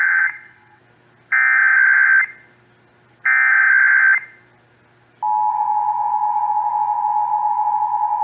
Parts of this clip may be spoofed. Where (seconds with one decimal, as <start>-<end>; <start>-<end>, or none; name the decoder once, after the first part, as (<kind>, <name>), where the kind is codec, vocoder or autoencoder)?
0.0-0.8 (vocoder, WaveNeXt); 5.5-8.2